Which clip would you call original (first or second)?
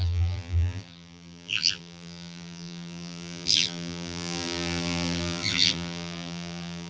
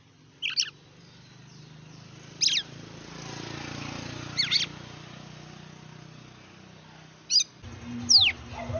second